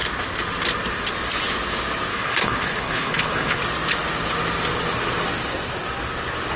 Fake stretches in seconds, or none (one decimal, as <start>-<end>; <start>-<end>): 2.1-3.6